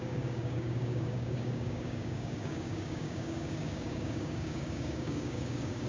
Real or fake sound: fake